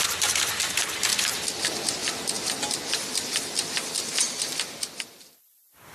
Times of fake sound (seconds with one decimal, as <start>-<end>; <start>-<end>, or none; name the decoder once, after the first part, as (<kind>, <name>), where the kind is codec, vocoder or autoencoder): none